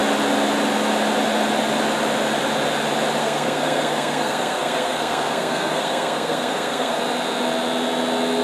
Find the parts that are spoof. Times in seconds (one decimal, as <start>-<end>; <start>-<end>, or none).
3.2-7.0

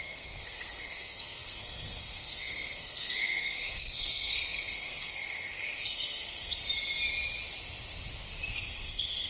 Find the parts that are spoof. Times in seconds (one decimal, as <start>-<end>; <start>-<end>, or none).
0.0-6.6; 8.5-9.3

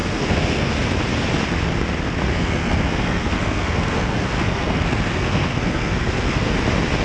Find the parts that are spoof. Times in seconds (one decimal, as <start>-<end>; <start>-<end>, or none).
0.0-0.7; 2.3-6.5

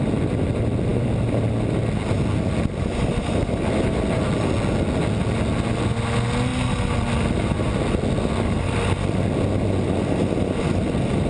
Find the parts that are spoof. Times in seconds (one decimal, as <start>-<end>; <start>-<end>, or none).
none